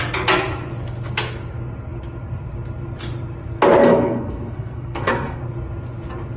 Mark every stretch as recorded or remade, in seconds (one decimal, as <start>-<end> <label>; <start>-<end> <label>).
0.0-3.8 recorded; 3.8-5.4 remade; 5.4-6.4 recorded